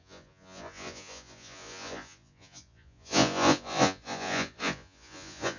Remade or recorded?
remade